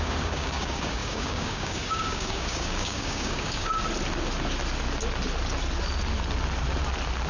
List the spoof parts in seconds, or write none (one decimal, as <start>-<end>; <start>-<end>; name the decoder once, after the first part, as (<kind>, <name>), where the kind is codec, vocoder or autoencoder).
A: 0.0-3.8 (codec, DAC)